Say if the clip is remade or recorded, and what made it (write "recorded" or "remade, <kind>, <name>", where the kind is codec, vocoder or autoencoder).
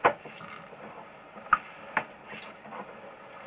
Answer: recorded